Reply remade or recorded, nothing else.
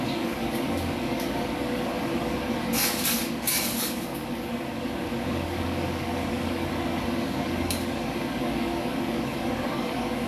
remade